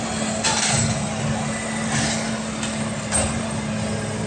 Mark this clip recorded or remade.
recorded